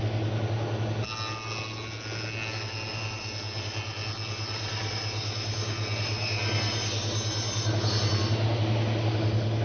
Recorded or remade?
recorded